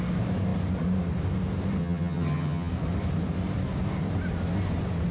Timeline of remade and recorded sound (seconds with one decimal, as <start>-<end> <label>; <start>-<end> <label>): 0.0-1.8 recorded; 1.8-2.7 remade; 2.7-5.1 recorded